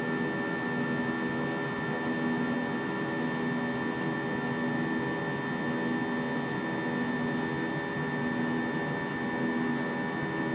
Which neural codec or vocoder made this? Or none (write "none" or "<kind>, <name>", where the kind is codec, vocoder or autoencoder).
none